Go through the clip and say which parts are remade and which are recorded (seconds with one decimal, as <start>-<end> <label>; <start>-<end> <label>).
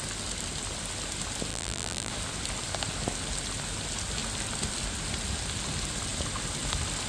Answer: 0.0-1.5 recorded; 1.5-2.1 remade; 2.1-7.1 recorded